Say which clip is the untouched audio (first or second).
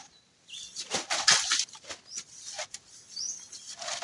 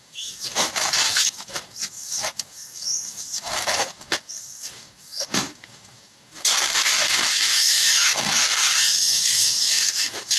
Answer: first